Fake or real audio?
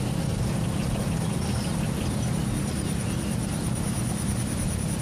fake